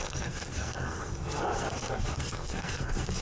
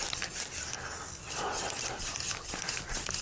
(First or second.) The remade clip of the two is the first